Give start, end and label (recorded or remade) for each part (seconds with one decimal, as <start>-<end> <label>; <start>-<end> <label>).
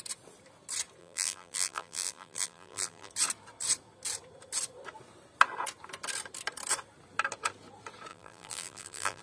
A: 0.0-1.0 recorded; 1.0-3.1 remade; 3.1-8.1 recorded; 8.1-9.2 remade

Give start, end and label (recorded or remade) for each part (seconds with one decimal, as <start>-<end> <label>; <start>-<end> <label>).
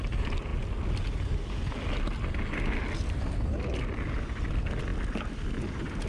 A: 0.0-6.1 recorded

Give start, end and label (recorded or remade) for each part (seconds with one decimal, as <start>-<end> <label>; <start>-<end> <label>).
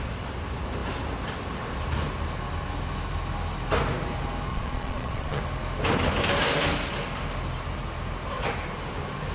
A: 0.0-4.5 recorded; 4.5-5.4 remade; 5.4-9.3 recorded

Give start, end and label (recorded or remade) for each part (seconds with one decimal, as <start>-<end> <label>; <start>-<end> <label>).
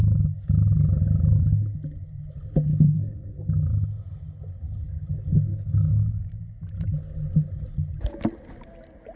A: 0.0-2.7 recorded; 2.7-3.5 remade; 3.5-5.5 recorded; 5.5-6.3 remade; 6.3-9.2 recorded